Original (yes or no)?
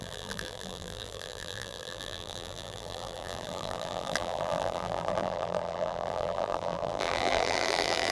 no